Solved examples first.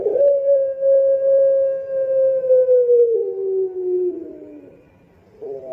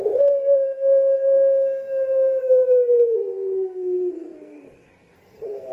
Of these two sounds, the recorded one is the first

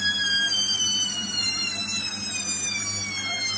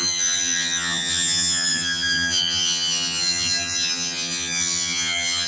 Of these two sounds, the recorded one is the first